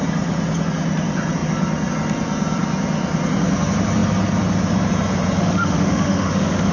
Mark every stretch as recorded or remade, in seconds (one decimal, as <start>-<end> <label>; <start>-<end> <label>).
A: 0.0-5.4 recorded; 5.4-6.7 remade